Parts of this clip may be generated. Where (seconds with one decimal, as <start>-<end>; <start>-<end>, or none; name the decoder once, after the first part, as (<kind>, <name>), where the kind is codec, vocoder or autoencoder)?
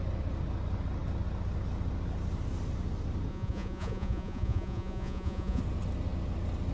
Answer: 3.3-5.6 (vocoder, Vocos)